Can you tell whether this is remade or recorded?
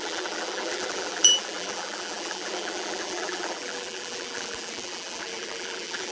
remade